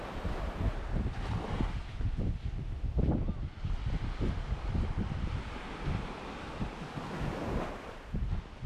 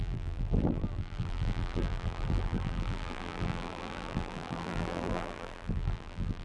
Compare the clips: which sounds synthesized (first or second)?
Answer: second